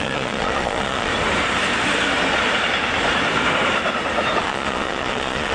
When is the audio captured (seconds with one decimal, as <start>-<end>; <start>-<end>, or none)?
1.1-4.4